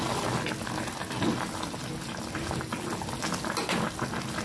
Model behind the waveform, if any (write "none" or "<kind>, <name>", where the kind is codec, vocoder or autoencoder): none